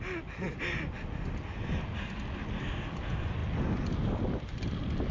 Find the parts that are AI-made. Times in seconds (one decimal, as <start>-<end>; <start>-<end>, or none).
none